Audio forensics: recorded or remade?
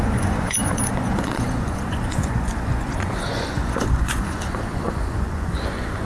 remade